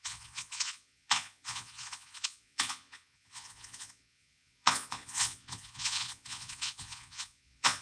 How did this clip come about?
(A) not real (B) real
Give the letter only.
A